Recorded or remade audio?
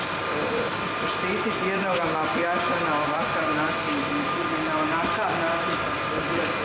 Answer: recorded